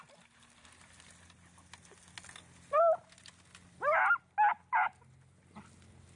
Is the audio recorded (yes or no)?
yes